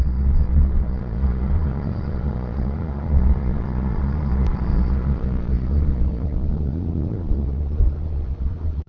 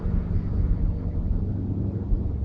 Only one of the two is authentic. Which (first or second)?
second